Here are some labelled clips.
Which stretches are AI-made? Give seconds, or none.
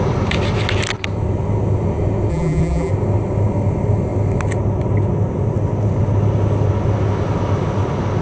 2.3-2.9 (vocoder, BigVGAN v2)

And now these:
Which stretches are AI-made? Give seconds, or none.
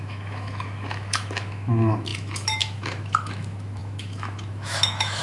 0.0-5.2 (autoencoder, DAC-VAE)